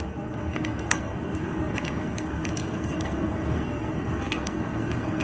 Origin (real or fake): fake